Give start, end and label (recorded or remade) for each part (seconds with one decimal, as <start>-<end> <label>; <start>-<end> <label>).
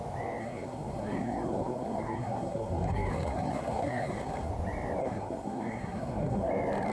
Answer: 0.0-0.4 recorded; 0.4-4.5 remade; 4.5-5.0 recorded; 5.0-6.5 remade; 6.5-6.9 recorded